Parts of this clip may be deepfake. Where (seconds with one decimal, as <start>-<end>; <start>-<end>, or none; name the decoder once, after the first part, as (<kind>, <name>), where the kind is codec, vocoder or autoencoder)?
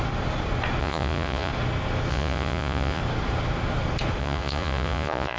0.8-1.5 (vocoder, Vocos); 2.1-3.0; 4.2-5.4